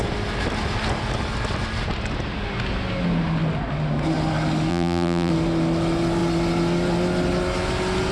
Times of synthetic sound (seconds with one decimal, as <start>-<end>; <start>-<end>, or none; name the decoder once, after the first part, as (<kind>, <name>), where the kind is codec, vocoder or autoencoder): 4.7-5.3 (vocoder, BigVGAN v2)